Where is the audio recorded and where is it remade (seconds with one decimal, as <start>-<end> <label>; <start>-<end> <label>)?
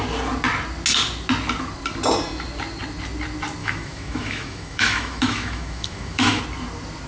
0.0-3.6 recorded; 3.6-6.4 remade; 6.4-7.1 recorded